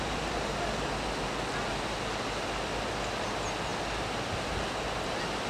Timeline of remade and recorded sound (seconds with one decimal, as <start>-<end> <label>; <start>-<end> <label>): 0.0-5.5 recorded